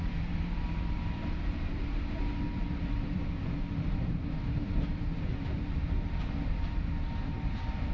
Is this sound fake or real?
fake